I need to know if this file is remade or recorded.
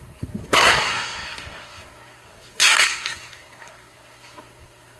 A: remade